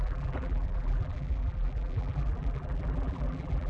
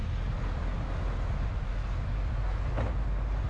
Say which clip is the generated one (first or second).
first